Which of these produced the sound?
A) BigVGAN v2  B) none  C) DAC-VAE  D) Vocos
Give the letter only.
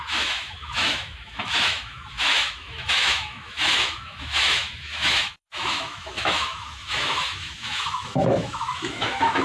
C